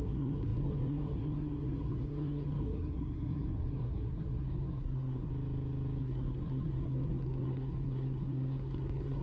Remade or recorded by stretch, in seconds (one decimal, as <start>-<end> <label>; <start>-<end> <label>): 0.0-5.3 remade; 5.3-6.0 recorded; 6.0-9.2 remade